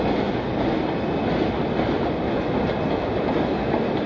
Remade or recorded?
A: recorded